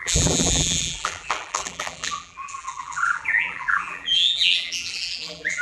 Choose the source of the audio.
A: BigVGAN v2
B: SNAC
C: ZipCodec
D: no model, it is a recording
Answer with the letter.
A